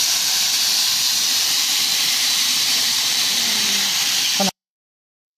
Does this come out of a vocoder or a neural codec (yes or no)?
yes